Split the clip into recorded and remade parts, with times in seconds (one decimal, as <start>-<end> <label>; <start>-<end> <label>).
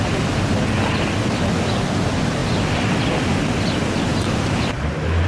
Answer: 0.0-4.1 recorded; 4.1-5.3 remade